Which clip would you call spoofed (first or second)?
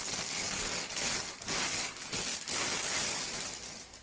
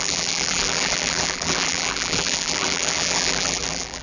second